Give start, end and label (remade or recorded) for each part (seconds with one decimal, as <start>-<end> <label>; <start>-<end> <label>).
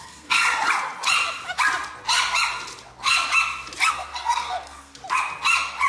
0.0-0.4 remade; 0.4-3.9 recorded; 3.9-5.0 remade; 5.0-5.9 recorded